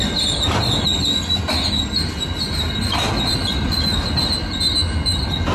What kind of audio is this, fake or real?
real